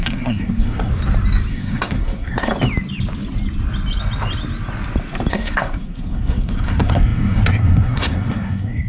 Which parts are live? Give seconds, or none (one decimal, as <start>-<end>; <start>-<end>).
0.9-1.5; 2.5-5.3